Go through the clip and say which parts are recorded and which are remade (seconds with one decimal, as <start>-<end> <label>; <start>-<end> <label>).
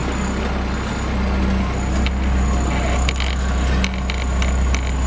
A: 0.0-5.1 recorded